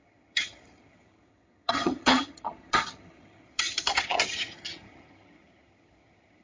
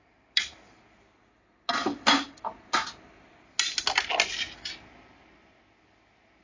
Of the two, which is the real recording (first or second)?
second